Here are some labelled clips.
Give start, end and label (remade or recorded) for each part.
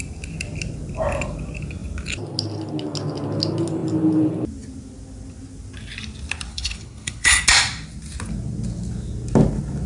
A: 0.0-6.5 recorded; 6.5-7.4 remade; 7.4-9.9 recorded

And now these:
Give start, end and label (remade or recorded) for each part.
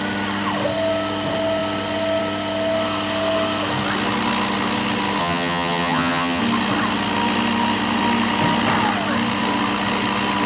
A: 0.0-5.2 recorded; 5.2-6.4 remade; 6.4-10.5 recorded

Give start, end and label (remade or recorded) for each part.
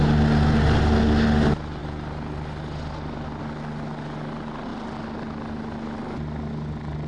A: 0.0-7.1 recorded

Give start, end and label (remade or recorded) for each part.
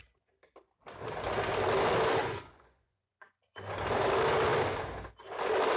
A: 0.0-2.2 recorded; 2.2-3.4 remade; 3.4-5.8 recorded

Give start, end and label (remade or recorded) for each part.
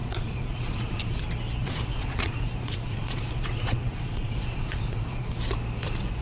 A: 0.0-1.2 remade; 1.2-1.6 recorded; 1.6-5.3 remade; 5.3-6.2 recorded